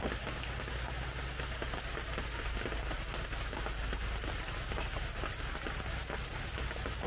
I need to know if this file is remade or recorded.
recorded